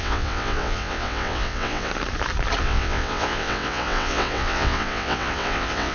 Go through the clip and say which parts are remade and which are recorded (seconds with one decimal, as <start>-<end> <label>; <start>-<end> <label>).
0.0-1.9 remade; 1.9-2.6 recorded; 2.6-5.9 remade